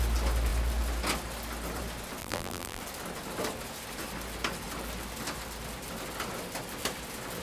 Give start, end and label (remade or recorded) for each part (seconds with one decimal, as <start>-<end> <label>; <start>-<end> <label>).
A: 0.0-2.2 recorded; 2.2-2.8 remade; 2.8-7.4 recorded